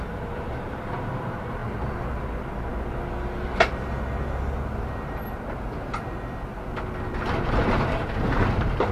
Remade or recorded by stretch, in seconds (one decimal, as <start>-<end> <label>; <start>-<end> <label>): 0.0-1.6 remade; 1.6-2.2 recorded; 2.2-2.7 remade; 2.7-7.6 recorded; 7.6-8.9 remade